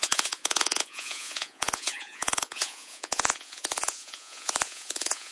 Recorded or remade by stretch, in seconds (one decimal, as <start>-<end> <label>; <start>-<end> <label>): 0.0-5.3 remade

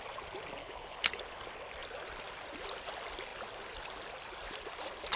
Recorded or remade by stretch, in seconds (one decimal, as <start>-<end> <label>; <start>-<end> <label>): 0.0-0.6 recorded; 0.6-1.4 remade; 1.4-5.2 recorded

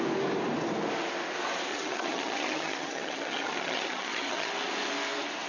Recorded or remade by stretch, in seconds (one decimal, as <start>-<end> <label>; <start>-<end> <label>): 0.0-1.7 recorded; 1.7-4.5 remade; 4.5-5.5 recorded

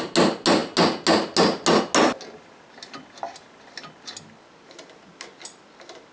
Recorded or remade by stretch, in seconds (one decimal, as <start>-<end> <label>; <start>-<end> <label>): 0.0-6.1 recorded

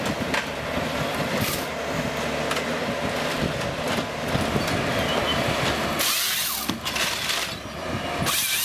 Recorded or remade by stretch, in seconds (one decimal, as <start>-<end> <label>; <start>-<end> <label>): 0.0-8.6 recorded

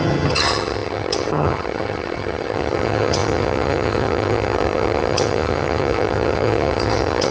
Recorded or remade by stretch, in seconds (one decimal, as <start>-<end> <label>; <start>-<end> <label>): 0.0-7.3 remade

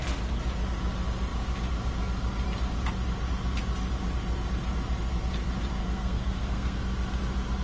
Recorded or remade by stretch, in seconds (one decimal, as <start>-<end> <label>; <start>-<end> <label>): 0.0-5.8 recorded; 5.8-6.8 remade; 6.8-7.6 recorded

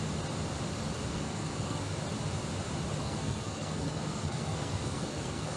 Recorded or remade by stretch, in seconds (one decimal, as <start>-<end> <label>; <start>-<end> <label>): 0.0-1.1 recorded; 1.1-2.0 remade; 2.0-3.0 recorded; 3.0-5.6 remade